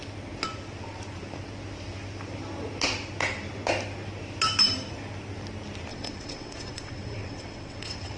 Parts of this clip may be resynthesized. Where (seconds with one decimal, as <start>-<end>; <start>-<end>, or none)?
5.9-8.2